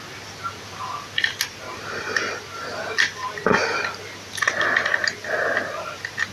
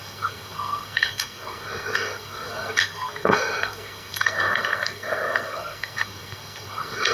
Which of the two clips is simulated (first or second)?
second